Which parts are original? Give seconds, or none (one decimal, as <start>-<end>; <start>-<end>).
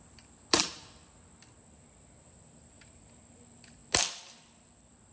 0.7-2.2